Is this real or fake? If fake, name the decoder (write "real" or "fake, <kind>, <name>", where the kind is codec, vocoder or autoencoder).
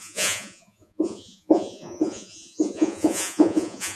fake, vocoder, Vocos